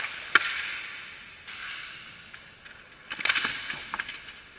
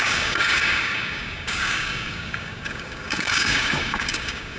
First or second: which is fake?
second